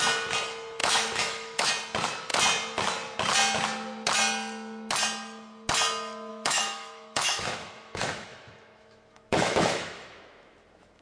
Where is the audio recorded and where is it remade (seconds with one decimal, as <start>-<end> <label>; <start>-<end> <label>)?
0.0-0.8 recorded; 0.8-1.7 remade; 1.7-6.3 recorded; 6.3-11.0 remade